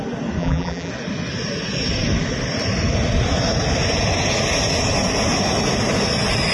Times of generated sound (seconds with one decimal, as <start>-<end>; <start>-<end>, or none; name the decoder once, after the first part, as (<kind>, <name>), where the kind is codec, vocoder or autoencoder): 0.4-0.9 (vocoder, BigVGAN v2)